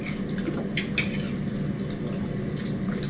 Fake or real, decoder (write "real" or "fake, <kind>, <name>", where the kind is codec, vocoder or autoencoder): real